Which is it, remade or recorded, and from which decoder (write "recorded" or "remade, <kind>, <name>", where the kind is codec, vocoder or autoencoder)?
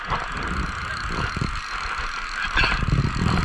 recorded